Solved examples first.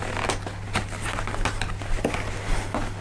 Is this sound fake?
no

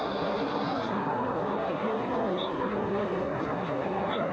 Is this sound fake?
yes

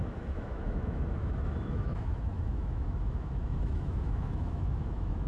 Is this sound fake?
yes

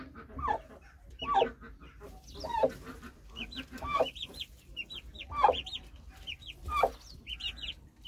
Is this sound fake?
no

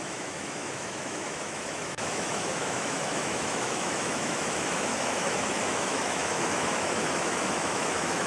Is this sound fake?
yes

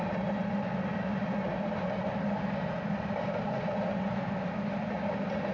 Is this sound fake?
no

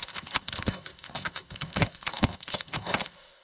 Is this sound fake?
yes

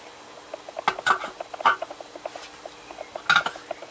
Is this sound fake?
no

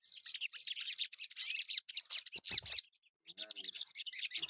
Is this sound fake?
no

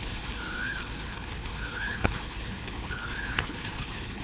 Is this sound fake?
yes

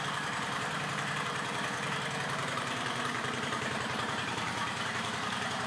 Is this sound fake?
yes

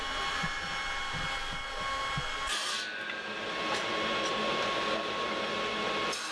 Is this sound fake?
no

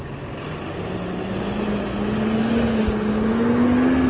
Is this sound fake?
no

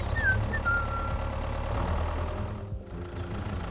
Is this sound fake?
no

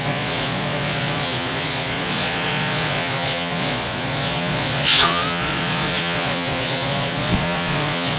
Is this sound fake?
yes